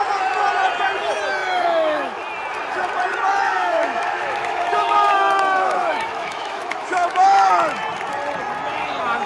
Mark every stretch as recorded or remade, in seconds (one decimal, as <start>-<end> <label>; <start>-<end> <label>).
0.0-1.4 recorded; 1.4-2.2 remade; 2.2-3.3 recorded; 3.3-7.5 remade; 7.5-9.3 recorded